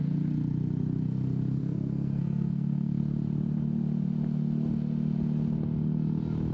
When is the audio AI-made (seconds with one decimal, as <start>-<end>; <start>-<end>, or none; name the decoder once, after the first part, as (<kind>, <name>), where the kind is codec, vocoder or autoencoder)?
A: 1.6-3.0 (codec, SNAC)